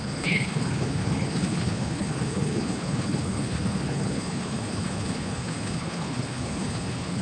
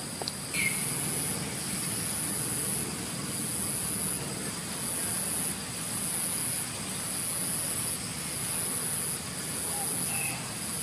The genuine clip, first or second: second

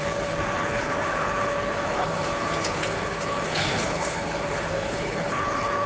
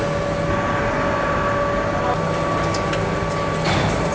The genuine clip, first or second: second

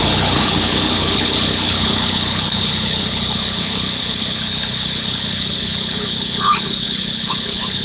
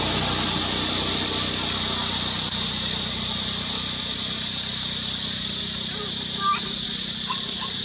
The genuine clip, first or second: second